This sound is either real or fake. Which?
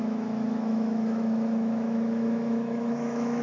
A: fake